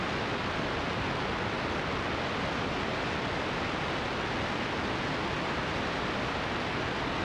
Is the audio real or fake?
real